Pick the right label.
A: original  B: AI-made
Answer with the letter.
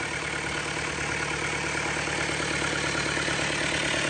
A